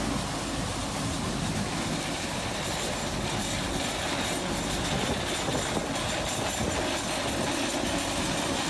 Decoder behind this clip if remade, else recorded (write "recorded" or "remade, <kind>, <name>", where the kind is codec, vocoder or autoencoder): recorded